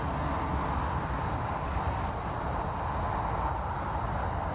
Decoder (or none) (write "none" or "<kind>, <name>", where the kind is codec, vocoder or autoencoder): none